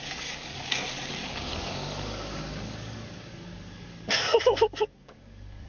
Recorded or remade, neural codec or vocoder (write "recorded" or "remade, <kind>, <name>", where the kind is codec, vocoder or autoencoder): remade, codec, DAC